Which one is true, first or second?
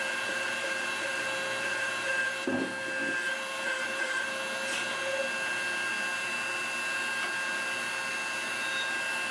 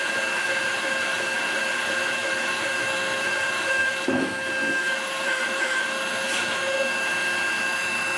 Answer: first